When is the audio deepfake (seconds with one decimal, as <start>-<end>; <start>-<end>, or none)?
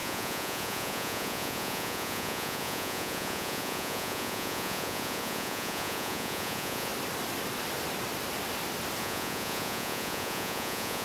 0.0-6.9; 9.0-11.0